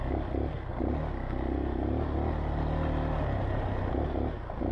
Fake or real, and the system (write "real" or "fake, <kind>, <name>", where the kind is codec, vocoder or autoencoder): real